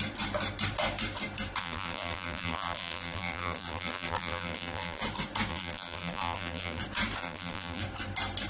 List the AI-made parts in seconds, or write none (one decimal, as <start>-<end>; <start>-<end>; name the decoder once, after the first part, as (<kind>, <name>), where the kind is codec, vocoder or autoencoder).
1.6-5.0 (vocoder, BigVGAN v2); 5.5-6.8; 7.2-7.8